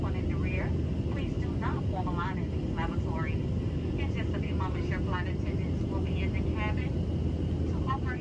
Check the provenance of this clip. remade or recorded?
recorded